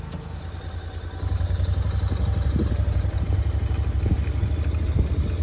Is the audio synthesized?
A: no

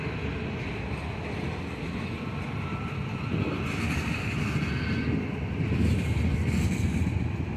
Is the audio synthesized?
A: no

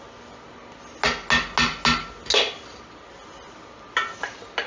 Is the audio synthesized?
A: no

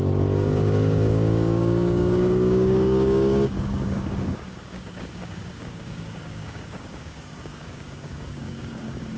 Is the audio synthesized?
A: yes